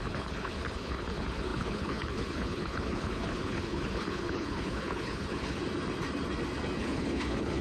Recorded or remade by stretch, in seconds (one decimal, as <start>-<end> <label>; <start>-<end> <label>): 0.0-5.6 remade; 5.6-6.8 recorded; 6.8-7.6 remade